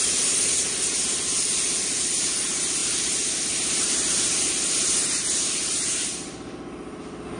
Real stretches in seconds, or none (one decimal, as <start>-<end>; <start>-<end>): 0.0-7.4